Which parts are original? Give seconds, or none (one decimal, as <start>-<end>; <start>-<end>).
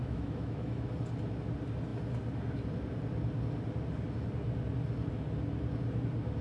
0.9-6.4